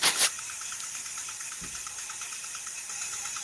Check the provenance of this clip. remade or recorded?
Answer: remade